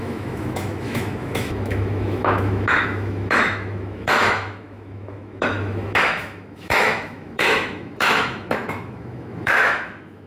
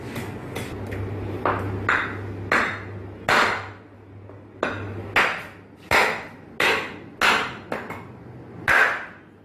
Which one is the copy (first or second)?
first